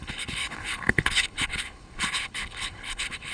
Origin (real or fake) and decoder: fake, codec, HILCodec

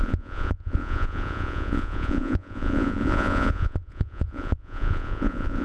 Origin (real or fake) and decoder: fake, vocoder, Vocos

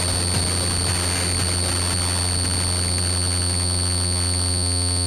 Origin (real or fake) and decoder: real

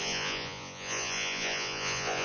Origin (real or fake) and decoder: fake, vocoder, Vocos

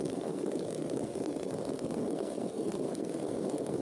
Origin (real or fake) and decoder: fake, codec, SNAC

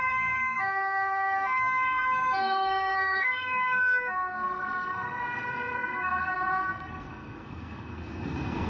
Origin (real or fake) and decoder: fake, codec, SNAC